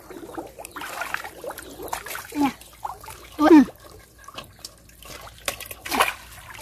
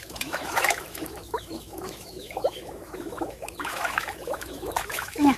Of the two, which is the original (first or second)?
first